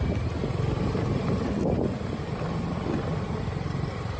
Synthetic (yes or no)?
no